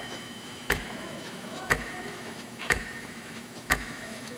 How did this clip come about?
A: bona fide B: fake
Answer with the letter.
B